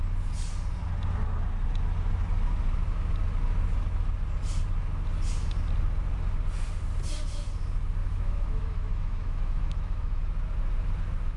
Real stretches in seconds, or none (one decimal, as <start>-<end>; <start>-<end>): 0.0-8.0; 10.2-11.4